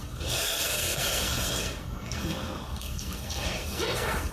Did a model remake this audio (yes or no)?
yes